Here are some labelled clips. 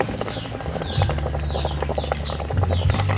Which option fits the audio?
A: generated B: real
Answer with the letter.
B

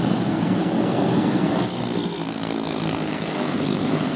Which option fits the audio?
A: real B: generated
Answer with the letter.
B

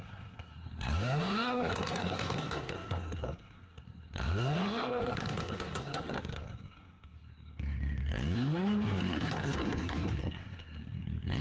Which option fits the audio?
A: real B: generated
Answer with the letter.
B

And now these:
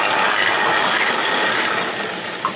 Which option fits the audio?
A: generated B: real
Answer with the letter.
B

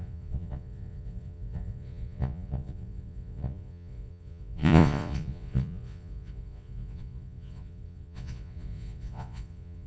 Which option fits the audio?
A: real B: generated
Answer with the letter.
B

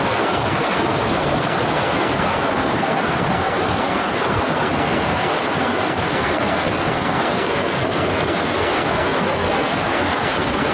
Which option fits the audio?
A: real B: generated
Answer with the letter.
B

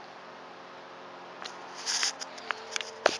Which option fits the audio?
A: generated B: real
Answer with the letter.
A